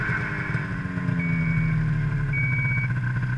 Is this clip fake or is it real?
real